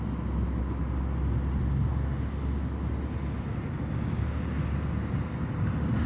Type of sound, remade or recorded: recorded